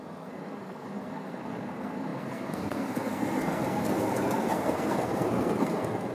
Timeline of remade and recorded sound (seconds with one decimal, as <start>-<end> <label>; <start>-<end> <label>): 0.0-6.1 remade